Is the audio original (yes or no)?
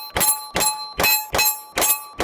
yes